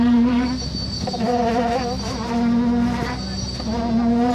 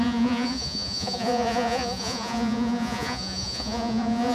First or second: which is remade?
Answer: second